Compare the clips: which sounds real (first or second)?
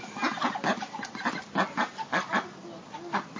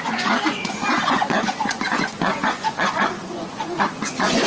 first